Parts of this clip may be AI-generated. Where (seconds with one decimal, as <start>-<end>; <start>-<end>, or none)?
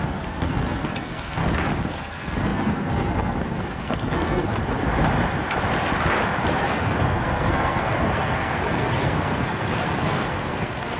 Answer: 0.0-1.4; 1.9-4.5; 6.5-11.0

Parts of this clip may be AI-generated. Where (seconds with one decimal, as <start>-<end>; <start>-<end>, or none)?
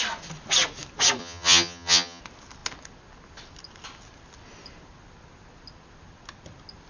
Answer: 1.2-2.2